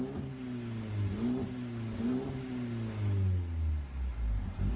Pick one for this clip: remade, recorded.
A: recorded